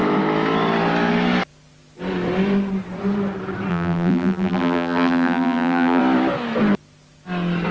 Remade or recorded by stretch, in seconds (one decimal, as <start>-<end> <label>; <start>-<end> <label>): 0.0-3.7 recorded; 3.7-6.0 remade; 6.0-7.7 recorded

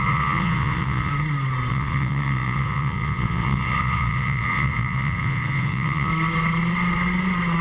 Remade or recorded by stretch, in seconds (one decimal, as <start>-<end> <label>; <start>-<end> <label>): 0.0-1.1 remade; 1.1-1.7 recorded; 1.7-6.1 remade; 6.1-7.6 recorded